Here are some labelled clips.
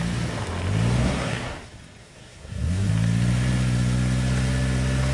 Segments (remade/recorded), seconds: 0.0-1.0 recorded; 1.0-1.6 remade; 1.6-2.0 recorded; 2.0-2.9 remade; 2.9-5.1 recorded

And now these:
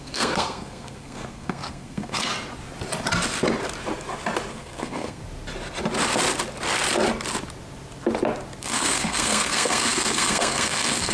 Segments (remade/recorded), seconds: 0.0-2.3 remade; 2.3-4.5 recorded; 4.5-5.2 remade; 5.2-8.6 recorded; 8.6-11.1 remade

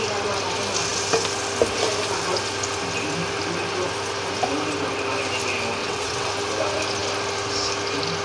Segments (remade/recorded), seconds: 0.0-5.8 recorded; 5.8-6.3 remade; 6.3-8.2 recorded

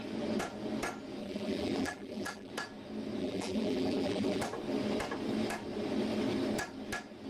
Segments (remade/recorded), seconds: 0.0-1.2 recorded; 1.2-2.5 remade; 2.5-3.2 recorded; 3.2-4.4 remade; 4.4-7.3 recorded

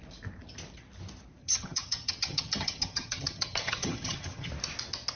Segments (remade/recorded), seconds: 0.0-1.4 recorded; 1.4-4.5 remade; 4.5-5.2 recorded